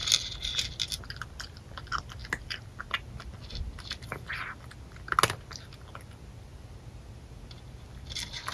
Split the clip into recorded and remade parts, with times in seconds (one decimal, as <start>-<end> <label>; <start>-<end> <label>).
0.0-8.5 recorded